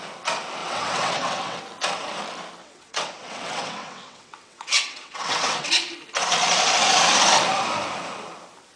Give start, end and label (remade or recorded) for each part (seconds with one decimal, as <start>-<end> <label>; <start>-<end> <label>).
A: 0.0-0.6 recorded; 0.6-1.6 remade; 1.6-2.6 recorded; 2.6-5.7 remade; 5.7-8.8 recorded